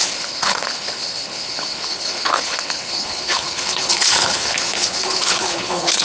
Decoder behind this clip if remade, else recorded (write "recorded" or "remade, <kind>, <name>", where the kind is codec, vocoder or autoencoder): remade, codec, HILCodec